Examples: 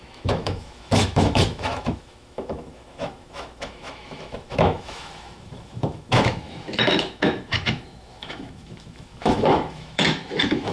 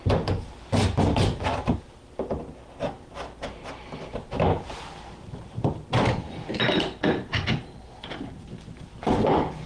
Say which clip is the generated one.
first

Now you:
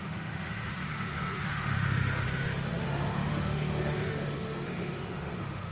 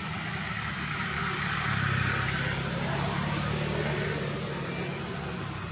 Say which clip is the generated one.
first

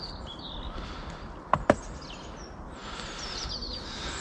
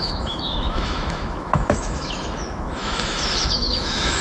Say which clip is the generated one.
second